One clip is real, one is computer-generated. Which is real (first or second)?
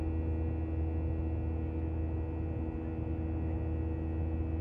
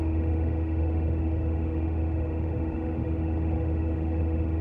first